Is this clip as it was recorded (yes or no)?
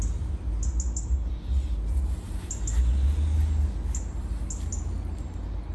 yes